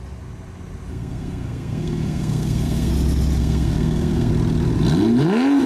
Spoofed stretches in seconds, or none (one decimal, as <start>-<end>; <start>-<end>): 0.9-2.9; 3.4-4.3